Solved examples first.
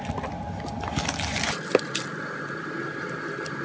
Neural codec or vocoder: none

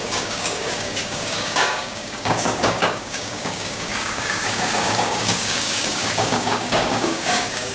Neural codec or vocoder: codec, DAC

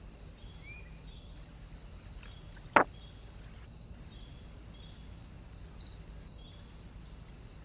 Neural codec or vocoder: none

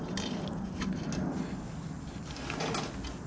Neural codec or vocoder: none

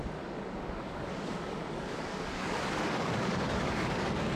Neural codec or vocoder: codec, DAC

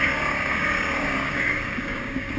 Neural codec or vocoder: codec, DAC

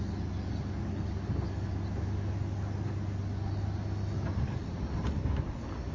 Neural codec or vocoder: none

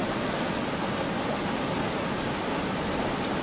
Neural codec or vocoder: none